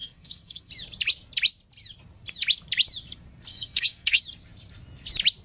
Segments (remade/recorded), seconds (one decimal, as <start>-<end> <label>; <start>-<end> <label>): 0.0-0.7 remade; 0.7-3.5 recorded; 3.5-4.2 remade; 4.2-5.4 recorded